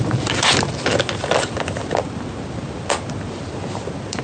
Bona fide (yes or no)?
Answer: yes